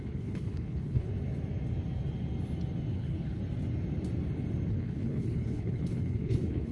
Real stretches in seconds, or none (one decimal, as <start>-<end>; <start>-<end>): 1.1-2.9; 3.4-4.7